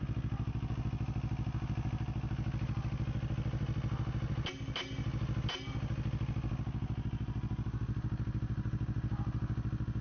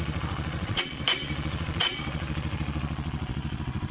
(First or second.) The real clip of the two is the first